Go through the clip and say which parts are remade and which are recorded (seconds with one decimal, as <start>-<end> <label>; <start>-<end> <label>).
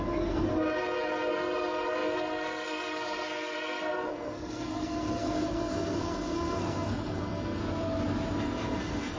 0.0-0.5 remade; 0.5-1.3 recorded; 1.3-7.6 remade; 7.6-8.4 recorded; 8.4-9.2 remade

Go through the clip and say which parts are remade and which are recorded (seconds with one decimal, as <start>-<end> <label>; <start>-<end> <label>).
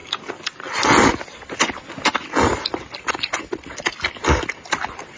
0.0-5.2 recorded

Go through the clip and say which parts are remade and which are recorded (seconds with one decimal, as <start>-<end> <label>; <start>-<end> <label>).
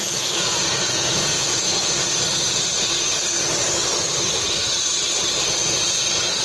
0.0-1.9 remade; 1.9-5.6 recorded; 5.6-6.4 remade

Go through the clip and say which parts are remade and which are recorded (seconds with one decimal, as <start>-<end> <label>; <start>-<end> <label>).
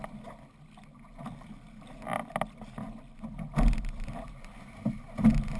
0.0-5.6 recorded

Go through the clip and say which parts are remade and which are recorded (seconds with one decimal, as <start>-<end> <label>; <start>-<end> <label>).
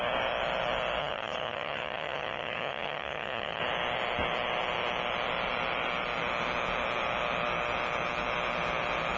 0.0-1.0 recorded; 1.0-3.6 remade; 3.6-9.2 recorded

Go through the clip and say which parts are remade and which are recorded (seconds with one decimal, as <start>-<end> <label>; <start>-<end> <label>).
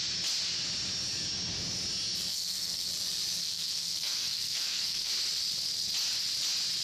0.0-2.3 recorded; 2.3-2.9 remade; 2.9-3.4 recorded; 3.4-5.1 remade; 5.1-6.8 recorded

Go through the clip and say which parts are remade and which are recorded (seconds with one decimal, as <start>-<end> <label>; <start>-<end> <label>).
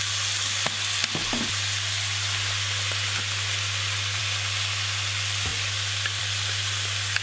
0.0-7.2 recorded